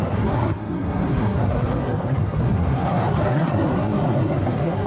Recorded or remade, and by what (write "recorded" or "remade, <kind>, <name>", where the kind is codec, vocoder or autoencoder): remade, codec, SNAC